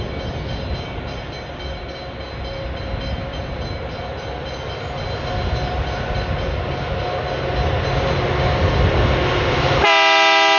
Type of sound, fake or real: real